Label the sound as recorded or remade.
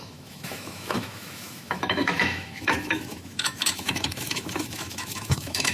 remade